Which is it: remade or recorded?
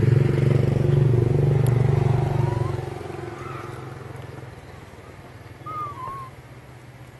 recorded